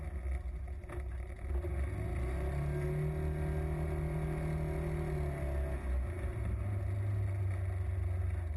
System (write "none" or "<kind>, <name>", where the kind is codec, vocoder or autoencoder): none